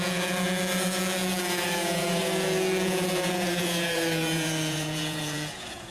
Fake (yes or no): yes